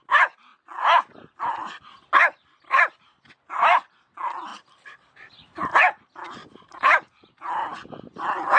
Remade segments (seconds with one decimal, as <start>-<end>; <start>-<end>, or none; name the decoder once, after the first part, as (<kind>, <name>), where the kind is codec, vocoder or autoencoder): 4.5-6.0 (vocoder, BigVGAN v2); 6.4-7.5